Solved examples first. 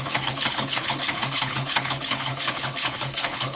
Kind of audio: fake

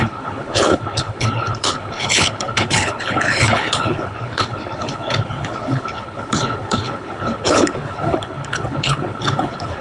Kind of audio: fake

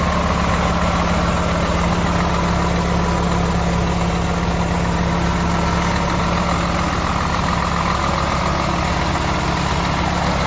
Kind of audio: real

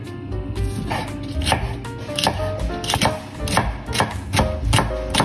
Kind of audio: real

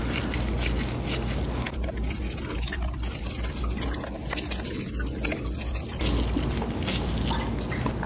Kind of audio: real